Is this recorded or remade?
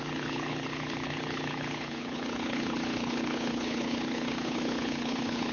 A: remade